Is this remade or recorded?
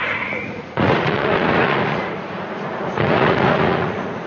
remade